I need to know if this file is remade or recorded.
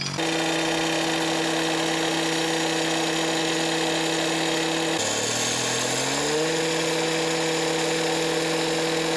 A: recorded